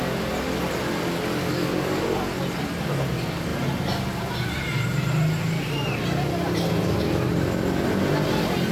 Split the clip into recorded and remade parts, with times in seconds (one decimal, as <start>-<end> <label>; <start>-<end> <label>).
0.0-1.4 recorded; 1.4-2.0 remade; 2.0-8.7 recorded